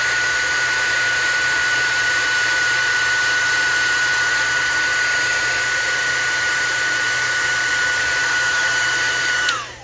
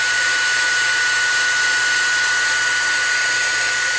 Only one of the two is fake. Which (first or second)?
first